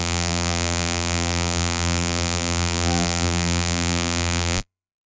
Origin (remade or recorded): remade